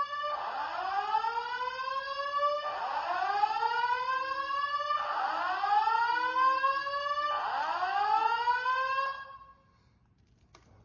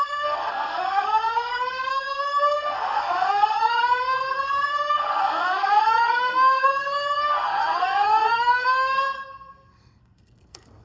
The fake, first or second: second